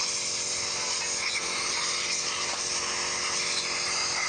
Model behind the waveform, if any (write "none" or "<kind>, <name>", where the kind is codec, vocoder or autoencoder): none